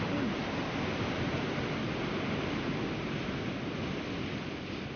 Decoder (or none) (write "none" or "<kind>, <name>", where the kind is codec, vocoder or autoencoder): none